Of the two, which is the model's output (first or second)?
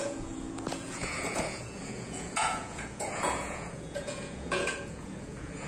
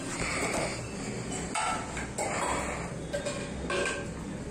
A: first